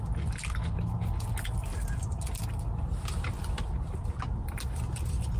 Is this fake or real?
real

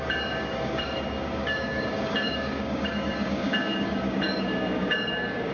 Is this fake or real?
fake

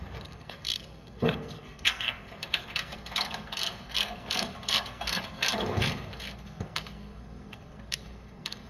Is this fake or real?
fake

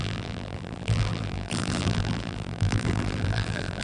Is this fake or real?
fake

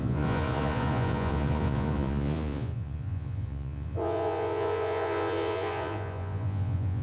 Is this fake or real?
fake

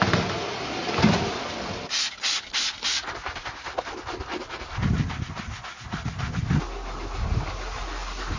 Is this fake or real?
real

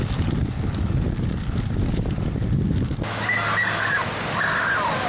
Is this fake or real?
real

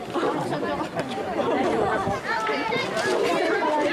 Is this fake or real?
real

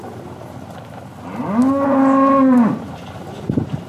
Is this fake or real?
real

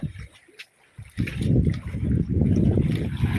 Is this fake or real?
real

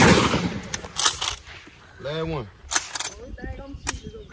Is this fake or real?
real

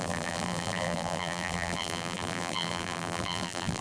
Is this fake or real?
fake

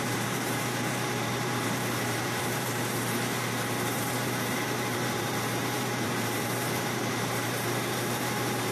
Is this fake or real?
fake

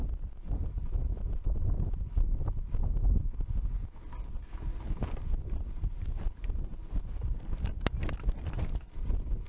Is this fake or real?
real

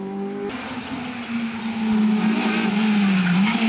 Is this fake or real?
real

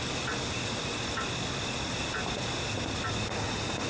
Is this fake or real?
real